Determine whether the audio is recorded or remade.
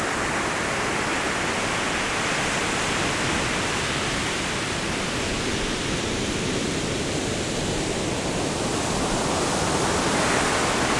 recorded